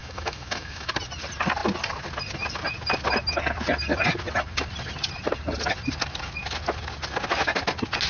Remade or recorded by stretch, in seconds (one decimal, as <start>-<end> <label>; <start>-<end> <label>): 0.0-0.9 remade; 0.9-8.1 recorded